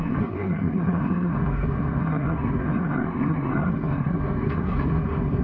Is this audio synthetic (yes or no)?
yes